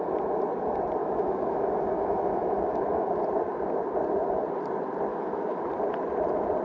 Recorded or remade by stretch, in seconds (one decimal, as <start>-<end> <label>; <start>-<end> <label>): 0.0-1.0 recorded; 1.0-3.1 remade; 3.1-5.1 recorded; 5.1-5.7 remade; 5.7-6.6 recorded